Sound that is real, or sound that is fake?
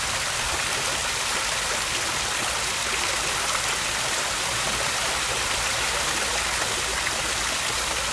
real